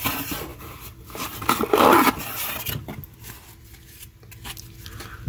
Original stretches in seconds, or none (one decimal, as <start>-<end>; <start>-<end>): 0.0-5.3